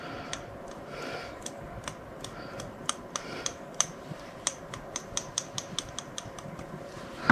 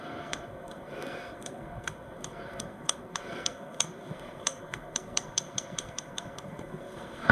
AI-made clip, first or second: second